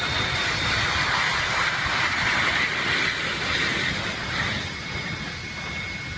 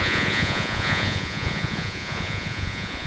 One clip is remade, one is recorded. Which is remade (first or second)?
second